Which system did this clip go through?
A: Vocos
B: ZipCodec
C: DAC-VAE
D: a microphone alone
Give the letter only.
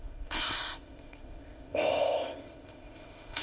B